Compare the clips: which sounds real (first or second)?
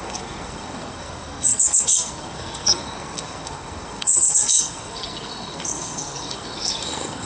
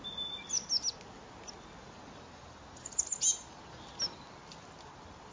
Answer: second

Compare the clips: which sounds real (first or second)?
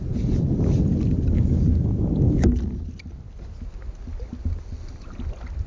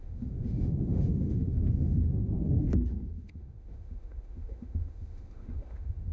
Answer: first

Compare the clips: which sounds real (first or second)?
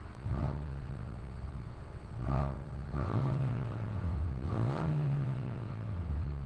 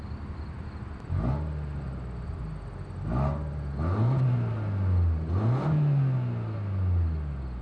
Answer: second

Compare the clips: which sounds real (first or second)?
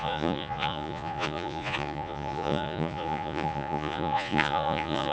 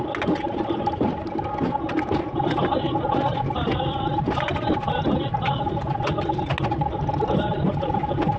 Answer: second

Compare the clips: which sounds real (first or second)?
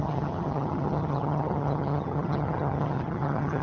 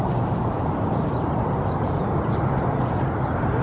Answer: second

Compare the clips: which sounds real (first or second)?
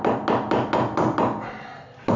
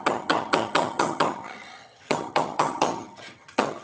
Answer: first